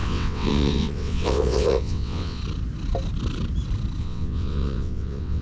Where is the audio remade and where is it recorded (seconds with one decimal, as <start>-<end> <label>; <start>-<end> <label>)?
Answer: 0.0-2.4 remade; 2.4-4.0 recorded; 4.0-5.4 remade